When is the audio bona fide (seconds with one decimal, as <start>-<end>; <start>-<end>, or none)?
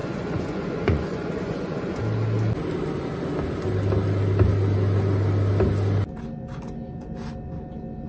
2.0-8.1